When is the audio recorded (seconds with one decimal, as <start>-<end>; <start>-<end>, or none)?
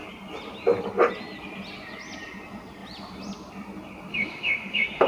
0.0-4.1